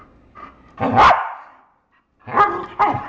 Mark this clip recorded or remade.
recorded